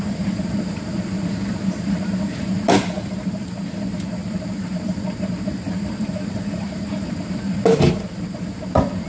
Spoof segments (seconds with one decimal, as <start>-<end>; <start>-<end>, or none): 0.0-0.9; 1.8-9.1